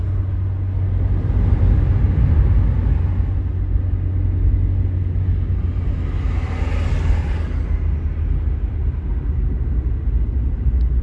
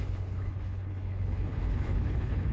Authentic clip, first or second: first